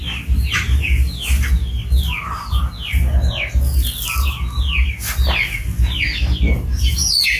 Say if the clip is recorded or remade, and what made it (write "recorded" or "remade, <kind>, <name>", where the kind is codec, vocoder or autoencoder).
recorded